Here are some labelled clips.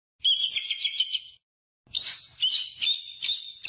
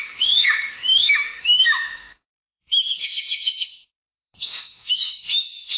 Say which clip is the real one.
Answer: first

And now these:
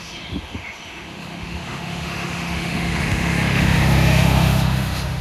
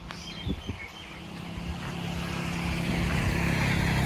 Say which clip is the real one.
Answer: second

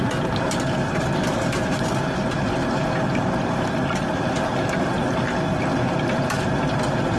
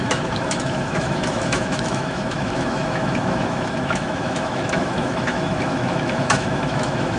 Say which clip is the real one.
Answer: first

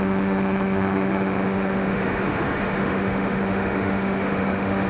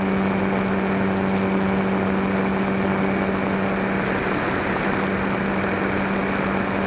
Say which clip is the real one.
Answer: second